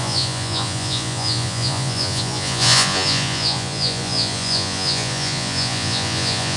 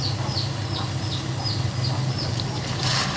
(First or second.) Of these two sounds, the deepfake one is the first